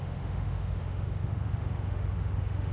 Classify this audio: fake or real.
fake